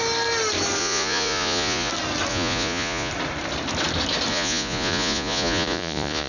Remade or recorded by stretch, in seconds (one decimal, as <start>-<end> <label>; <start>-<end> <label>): 0.0-0.8 recorded; 0.8-1.9 remade; 1.9-2.3 recorded; 2.3-3.1 remade; 3.1-4.3 recorded; 4.3-6.3 remade